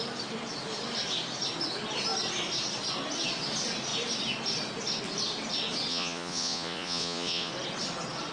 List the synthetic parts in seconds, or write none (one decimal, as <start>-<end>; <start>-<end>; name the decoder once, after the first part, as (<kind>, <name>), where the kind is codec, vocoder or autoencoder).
5.9-7.5 (vocoder, Vocos)